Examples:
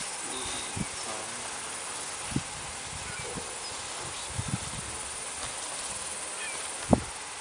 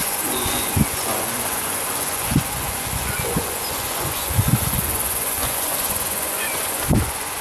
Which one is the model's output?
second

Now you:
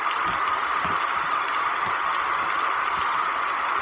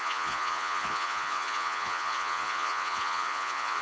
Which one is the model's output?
second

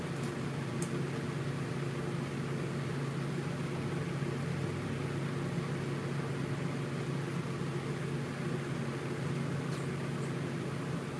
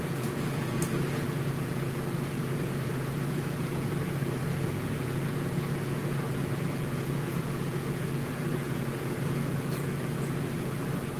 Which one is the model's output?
second